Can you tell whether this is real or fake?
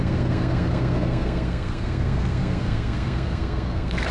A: fake